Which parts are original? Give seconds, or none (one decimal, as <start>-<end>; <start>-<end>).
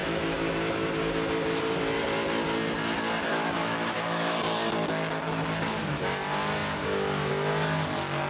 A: 0.9-3.3; 4.4-8.3